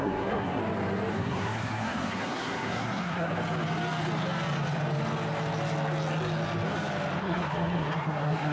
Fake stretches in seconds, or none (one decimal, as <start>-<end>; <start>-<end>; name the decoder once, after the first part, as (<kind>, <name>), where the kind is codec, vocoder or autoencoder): 0.0-0.6 (codec, SNAC); 1.1-3.3; 7.2-8.5